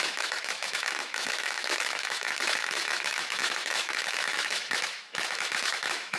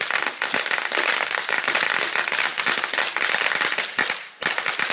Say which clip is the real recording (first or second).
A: second